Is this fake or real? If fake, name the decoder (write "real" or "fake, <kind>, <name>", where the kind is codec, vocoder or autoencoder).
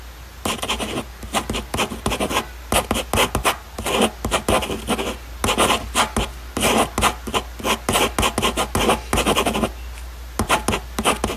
real